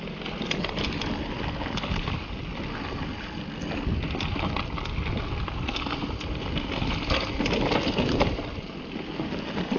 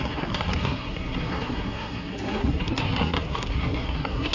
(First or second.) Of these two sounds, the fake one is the second